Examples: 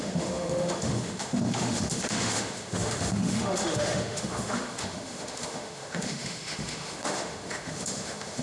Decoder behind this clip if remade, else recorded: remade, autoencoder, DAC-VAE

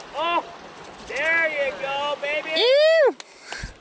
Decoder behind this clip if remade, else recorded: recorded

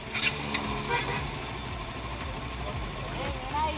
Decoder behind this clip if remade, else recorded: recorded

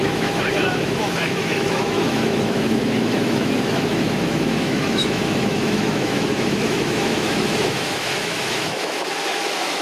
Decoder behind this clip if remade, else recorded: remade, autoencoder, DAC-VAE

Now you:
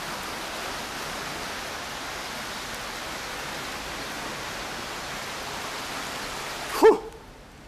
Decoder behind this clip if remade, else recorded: recorded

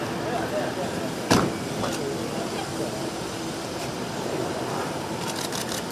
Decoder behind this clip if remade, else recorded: recorded